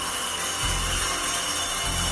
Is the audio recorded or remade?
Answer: recorded